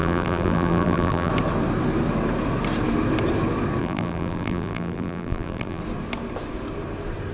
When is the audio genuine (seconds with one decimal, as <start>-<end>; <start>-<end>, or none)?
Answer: 1.3-3.8; 5.8-7.3